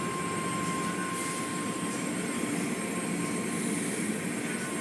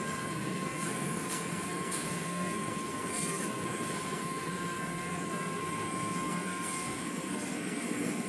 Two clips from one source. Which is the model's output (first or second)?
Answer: second